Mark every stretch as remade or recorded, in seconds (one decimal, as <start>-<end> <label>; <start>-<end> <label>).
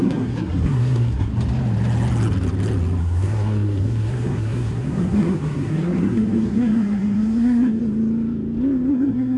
0.0-1.3 remade; 1.3-3.0 recorded; 3.0-7.8 remade; 7.8-8.9 recorded; 8.9-9.4 remade